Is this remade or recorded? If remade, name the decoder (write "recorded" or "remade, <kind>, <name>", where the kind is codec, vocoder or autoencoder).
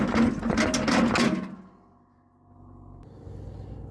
recorded